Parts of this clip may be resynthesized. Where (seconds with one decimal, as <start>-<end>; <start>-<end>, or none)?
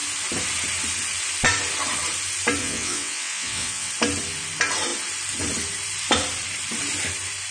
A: 2.6-3.9